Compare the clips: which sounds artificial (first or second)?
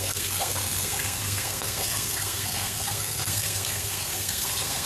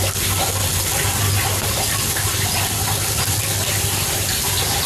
first